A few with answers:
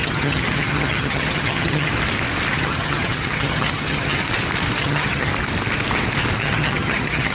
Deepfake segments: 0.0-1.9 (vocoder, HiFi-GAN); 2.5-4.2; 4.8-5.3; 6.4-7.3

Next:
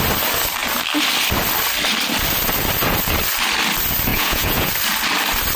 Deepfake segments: 4.1-4.7 (vocoder, Vocos)

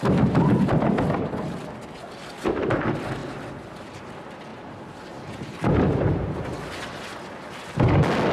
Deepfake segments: none

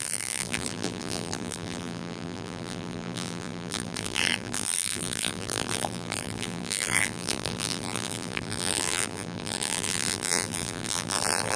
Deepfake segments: 0.0-11.6 (vocoder, BigVGAN v2)